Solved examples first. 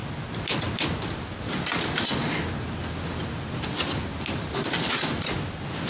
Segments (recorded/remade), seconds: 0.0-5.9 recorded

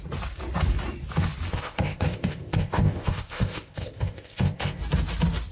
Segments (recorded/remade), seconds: 0.0-1.5 recorded; 1.5-4.8 remade; 4.8-5.5 recorded